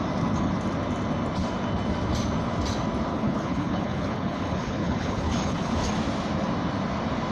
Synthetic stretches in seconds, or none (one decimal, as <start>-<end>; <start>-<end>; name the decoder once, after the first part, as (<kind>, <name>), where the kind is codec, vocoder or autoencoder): 3.1-5.9 (codec, HILCodec)